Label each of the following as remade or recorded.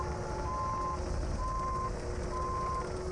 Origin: recorded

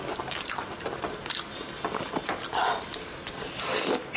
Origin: recorded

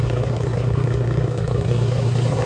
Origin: remade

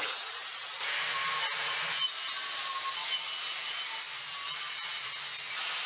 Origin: recorded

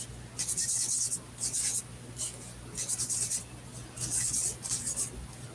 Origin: recorded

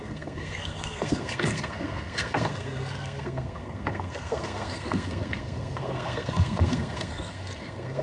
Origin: remade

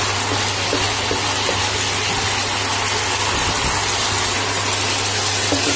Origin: recorded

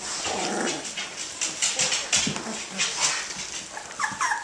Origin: recorded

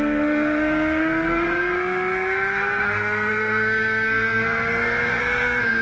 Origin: remade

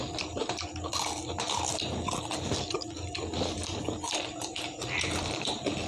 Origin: recorded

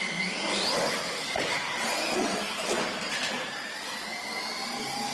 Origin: recorded